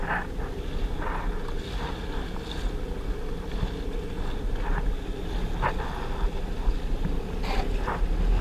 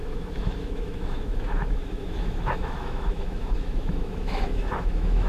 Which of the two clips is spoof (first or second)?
second